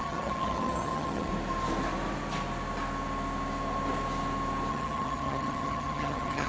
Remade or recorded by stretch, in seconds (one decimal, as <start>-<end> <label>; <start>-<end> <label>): 0.0-1.3 remade; 1.3-4.7 recorded; 4.7-6.5 remade